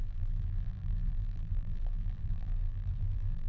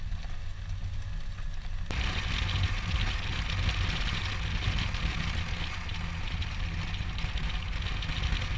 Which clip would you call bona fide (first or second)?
second